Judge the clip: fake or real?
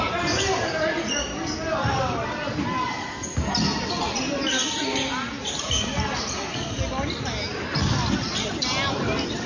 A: real